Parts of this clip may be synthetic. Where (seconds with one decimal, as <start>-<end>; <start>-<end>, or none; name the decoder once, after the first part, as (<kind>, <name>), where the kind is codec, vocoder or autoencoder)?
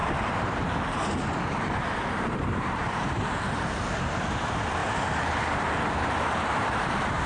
0.0-3.4 (vocoder, BigVGAN v2); 4.8-7.3